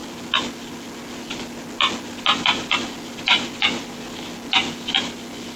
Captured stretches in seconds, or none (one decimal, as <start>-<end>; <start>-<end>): 0.0-5.6